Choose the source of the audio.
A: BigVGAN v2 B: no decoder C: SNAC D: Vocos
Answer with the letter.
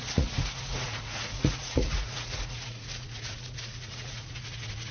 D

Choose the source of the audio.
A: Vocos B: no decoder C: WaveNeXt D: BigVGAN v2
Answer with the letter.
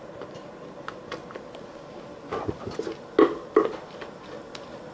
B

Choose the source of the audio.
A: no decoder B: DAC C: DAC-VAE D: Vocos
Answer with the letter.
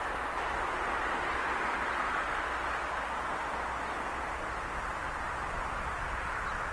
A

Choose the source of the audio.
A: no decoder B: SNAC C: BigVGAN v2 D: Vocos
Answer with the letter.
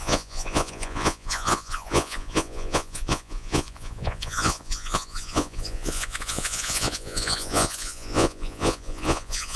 D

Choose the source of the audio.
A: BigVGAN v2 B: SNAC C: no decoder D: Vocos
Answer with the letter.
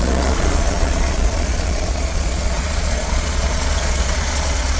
D